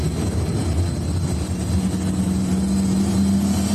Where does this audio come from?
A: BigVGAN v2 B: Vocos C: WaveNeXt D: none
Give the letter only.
D